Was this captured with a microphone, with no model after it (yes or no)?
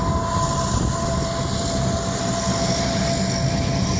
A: yes